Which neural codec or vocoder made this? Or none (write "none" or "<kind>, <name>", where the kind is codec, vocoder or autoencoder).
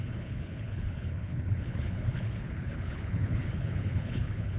codec, HILCodec